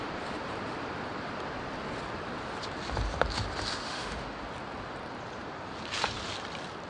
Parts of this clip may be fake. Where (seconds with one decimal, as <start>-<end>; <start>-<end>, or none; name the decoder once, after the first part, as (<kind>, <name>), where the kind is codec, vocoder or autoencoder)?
3.8-4.4 (autoencoder, DAC-VAE)